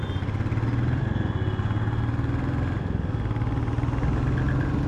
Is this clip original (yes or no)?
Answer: yes